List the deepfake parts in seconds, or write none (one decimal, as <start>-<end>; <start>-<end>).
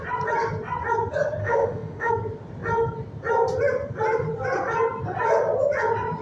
1.4-2.1